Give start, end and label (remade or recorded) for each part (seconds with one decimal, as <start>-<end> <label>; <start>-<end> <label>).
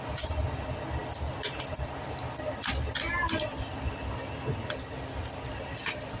0.0-6.2 recorded